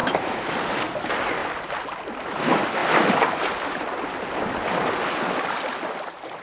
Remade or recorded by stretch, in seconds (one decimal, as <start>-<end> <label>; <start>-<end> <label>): 0.0-0.5 remade; 0.5-6.4 recorded